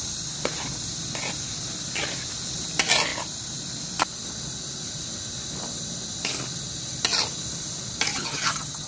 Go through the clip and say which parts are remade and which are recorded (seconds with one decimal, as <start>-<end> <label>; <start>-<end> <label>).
0.0-8.1 recorded; 8.1-8.9 remade